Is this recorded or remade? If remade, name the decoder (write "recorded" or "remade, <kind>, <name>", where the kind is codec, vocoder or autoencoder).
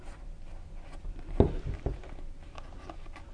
recorded